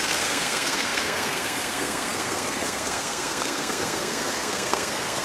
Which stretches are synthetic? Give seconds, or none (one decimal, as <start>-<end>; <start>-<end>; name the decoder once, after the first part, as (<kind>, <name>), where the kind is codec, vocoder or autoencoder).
0.0-5.2 (codec, SNAC)